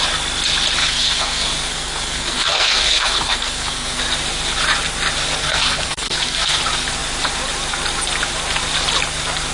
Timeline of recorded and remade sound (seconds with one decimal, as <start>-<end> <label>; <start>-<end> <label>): 0.0-0.8 recorded; 0.8-4.0 remade; 4.0-5.4 recorded; 5.4-6.6 remade; 6.6-9.5 recorded